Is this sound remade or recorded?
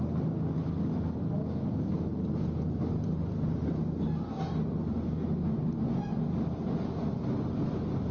recorded